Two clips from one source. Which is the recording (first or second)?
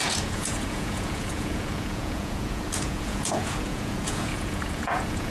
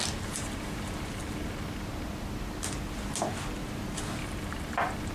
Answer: second